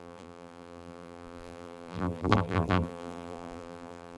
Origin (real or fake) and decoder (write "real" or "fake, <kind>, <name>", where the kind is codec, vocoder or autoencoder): fake, vocoder, BigVGAN v2